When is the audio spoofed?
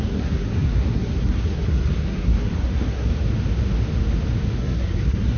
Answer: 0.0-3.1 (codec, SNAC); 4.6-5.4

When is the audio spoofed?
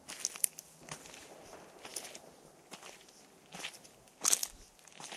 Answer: none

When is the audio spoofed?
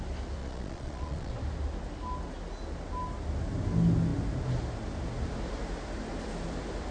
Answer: 0.4-1.3 (vocoder, Vocos)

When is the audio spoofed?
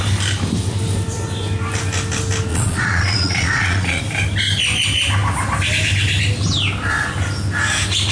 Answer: 2.5-4.0 (vocoder, Vocos)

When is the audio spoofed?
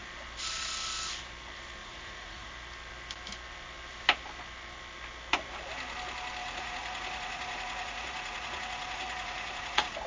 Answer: 1.8-2.5 (vocoder, Vocos); 6.4-10.1